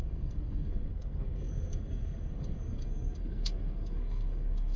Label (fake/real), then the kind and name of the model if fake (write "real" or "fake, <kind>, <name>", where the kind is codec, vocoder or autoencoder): fake, codec, SNAC